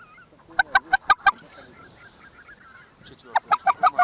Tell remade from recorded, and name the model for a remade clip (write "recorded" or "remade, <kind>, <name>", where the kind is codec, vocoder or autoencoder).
recorded